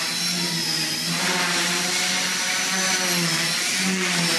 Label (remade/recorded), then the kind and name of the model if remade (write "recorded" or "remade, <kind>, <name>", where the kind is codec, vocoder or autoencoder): recorded